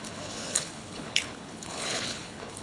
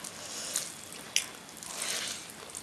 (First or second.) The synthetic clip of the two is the first